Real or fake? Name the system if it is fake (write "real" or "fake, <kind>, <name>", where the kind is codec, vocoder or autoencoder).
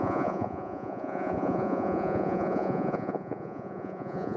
fake, vocoder, Vocos